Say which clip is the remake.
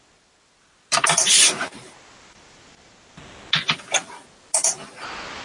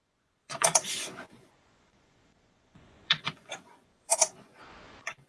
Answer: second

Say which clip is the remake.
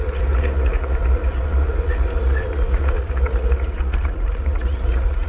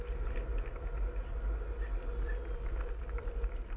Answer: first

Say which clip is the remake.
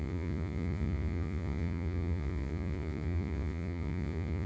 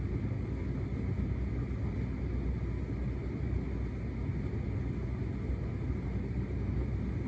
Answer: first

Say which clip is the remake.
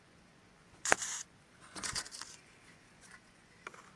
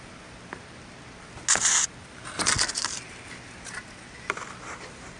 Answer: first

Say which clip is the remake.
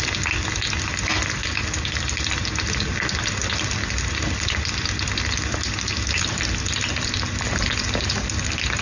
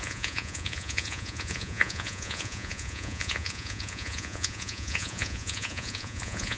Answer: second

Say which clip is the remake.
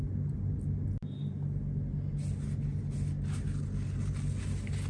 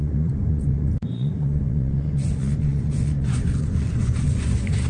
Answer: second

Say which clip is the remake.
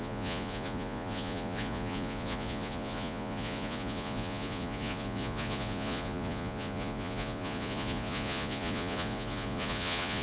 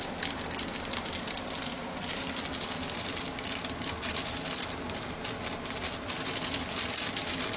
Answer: first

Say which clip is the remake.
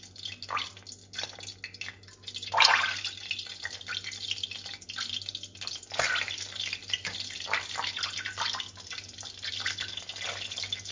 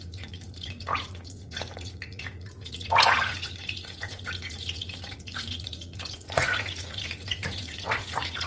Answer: second